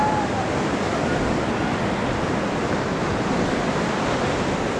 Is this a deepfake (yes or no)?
no